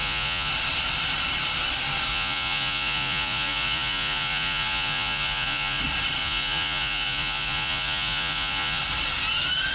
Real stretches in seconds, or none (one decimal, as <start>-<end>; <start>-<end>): 0.5-2.1; 5.8-6.2; 8.8-9.7